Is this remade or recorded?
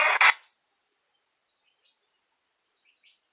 recorded